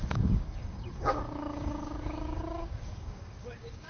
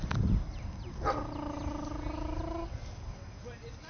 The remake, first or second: first